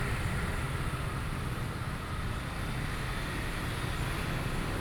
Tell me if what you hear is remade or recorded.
recorded